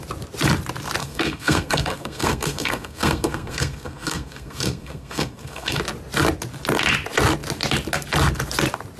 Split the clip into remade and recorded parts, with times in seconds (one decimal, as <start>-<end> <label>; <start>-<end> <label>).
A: 0.0-1.0 recorded; 1.0-5.8 remade; 5.8-9.0 recorded